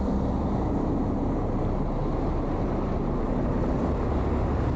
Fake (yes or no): no